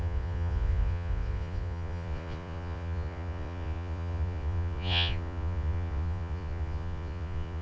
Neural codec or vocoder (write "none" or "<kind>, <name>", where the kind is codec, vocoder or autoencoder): vocoder, Vocos